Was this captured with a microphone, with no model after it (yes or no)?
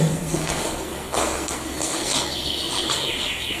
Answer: no